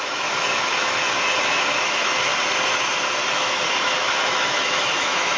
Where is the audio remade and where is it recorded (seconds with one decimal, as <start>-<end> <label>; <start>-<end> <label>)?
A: 0.0-2.3 remade; 2.3-3.3 recorded; 3.3-5.4 remade